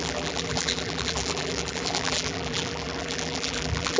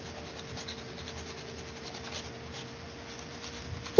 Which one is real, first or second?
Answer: second